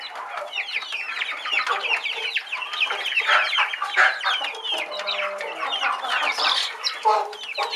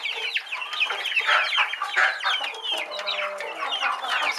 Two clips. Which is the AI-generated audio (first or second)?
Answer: first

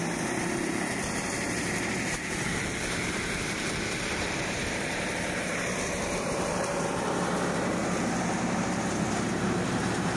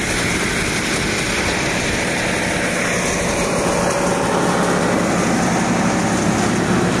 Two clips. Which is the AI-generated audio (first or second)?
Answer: first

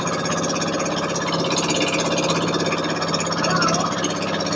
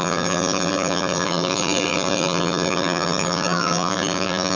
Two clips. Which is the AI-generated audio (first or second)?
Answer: second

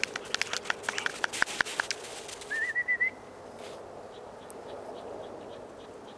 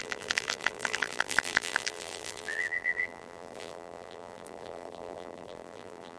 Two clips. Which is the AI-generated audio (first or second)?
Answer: second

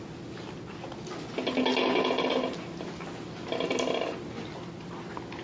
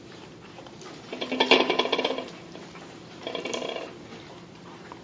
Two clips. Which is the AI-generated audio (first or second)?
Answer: second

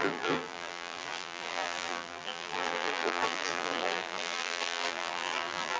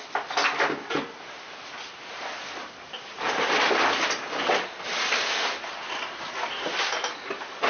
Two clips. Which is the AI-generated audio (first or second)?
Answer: first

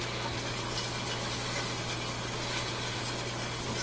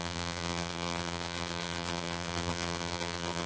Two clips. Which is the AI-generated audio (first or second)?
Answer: second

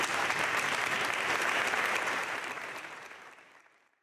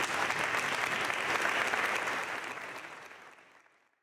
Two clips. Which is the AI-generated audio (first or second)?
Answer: first